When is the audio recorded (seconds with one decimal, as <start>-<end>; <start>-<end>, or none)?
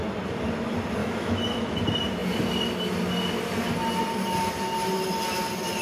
0.0-1.0; 1.8-5.8